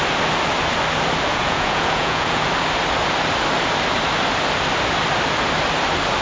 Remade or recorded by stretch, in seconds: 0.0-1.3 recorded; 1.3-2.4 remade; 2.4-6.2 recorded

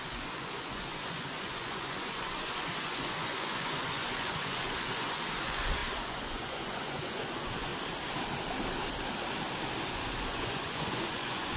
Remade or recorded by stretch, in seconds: 0.0-7.7 remade; 7.7-9.8 recorded; 9.8-11.6 remade

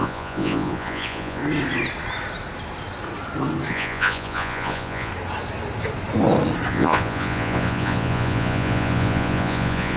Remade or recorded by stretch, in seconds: 0.0-1.4 remade; 1.4-3.7 recorded; 3.7-5.1 remade; 5.1-6.7 recorded; 6.7-10.0 remade

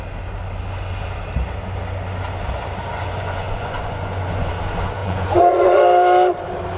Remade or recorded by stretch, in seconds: 0.0-2.9 recorded; 2.9-4.5 remade; 4.5-5.0 recorded; 5.0-5.8 remade; 5.8-6.8 recorded

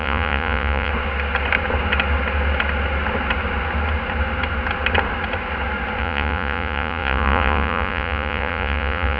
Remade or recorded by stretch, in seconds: 0.0-0.9 remade; 0.9-6.0 recorded; 6.0-9.2 remade